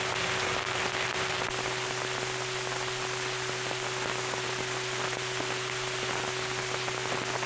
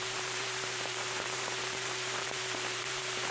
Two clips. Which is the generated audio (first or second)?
second